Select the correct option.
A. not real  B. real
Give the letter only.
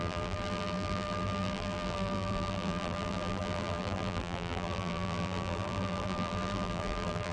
A